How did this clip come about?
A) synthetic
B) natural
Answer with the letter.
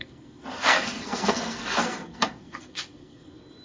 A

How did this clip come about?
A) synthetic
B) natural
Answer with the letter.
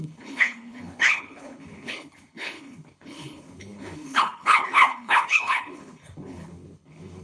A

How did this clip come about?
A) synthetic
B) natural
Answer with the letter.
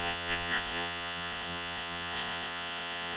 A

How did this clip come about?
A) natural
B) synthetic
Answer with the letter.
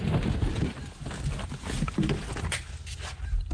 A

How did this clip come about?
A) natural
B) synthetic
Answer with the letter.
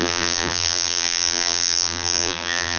B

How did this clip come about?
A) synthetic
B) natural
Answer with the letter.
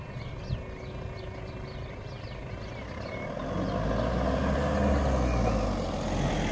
B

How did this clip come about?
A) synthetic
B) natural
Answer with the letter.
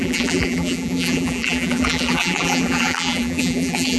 A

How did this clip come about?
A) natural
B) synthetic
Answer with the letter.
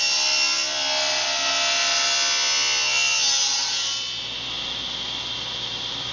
A